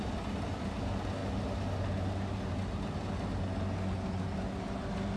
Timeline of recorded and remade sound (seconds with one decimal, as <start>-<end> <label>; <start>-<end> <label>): 0.0-5.2 recorded